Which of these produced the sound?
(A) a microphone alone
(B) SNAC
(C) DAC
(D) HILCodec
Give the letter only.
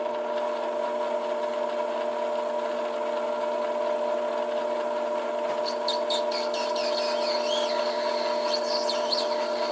A